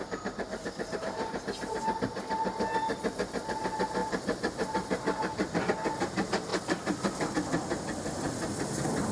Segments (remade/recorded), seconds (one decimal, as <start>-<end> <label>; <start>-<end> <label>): 0.0-1.8 remade; 1.8-4.0 recorded; 4.0-5.6 remade; 5.6-6.5 recorded; 6.5-7.3 remade; 7.3-9.1 recorded